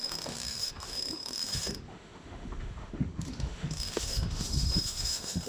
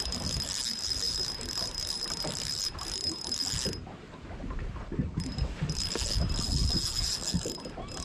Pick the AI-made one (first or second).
first